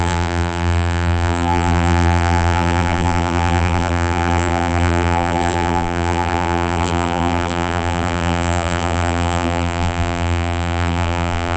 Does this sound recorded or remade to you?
remade